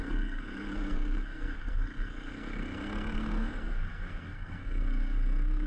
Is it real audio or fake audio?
fake